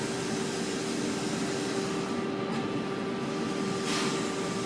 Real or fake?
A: real